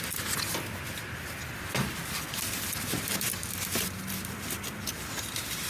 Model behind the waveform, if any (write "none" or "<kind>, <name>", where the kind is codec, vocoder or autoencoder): none